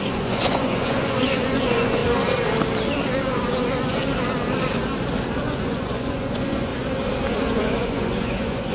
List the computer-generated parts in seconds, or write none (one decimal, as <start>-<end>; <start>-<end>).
0.0-2.0; 3.2-4.0; 5.4-6.7; 7.3-8.7

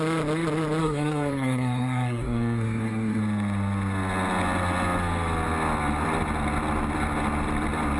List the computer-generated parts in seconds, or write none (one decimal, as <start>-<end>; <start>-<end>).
0.8-3.2